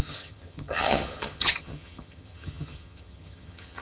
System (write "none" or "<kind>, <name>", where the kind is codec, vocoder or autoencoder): vocoder, HiFi-GAN